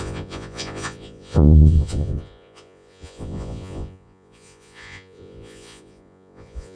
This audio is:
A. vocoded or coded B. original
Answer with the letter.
A